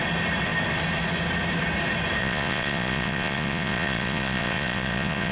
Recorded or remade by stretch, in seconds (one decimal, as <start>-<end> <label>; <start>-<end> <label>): 0.0-2.2 recorded; 2.2-5.3 remade